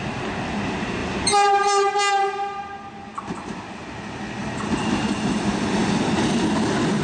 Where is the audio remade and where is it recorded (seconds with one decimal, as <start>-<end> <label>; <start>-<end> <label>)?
0.0-1.0 recorded; 1.0-1.9 remade; 1.9-7.0 recorded